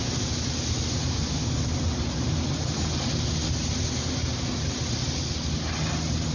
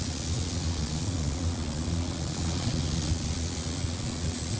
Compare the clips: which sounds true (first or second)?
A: first